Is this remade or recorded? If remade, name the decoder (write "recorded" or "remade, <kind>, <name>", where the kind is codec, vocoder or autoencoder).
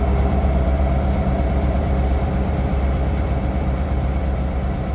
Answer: remade, vocoder, BigVGAN v2